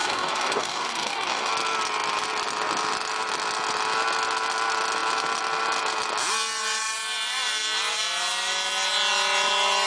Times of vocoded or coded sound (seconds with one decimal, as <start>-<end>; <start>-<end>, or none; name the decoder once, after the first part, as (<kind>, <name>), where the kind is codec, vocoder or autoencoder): 0.0-1.5 (codec, DAC)